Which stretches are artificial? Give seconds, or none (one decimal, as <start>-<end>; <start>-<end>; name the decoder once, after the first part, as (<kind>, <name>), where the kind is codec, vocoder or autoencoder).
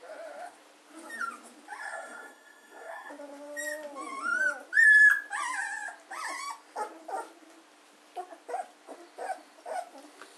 1.8-3.1 (codec, SNAC)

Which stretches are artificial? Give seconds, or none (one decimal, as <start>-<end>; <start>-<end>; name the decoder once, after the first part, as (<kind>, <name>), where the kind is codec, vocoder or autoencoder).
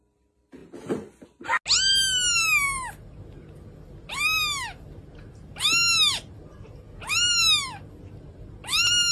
none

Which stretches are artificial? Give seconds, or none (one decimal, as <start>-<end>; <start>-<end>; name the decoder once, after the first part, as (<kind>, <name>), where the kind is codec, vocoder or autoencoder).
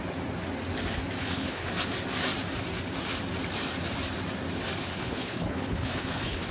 1.2-1.7 (codec, HILCodec); 4.8-6.5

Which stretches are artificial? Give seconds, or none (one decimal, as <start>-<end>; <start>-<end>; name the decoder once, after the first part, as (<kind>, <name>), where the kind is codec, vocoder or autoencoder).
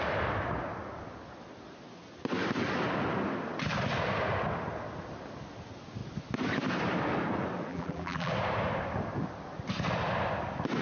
7.7-8.3 (vocoder, BigVGAN v2)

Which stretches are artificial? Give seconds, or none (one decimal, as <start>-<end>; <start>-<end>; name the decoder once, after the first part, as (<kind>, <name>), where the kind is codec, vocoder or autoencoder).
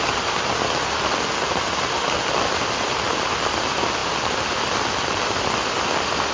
none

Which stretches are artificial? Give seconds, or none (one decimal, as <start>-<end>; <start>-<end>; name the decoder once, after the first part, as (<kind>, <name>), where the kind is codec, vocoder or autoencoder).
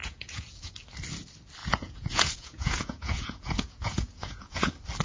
0.0-0.7 (vocoder, Vocos); 1.6-4.6